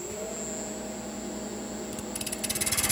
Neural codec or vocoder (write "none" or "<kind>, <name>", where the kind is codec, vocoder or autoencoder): none